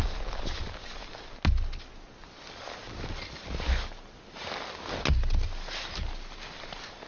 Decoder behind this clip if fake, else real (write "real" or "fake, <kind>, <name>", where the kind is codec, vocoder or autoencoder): real